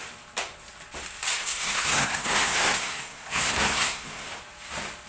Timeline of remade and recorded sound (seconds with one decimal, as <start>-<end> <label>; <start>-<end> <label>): 0.0-1.3 recorded; 1.3-4.4 remade; 4.4-5.1 recorded